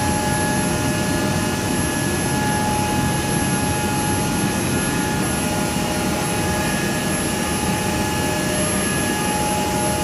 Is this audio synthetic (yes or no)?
no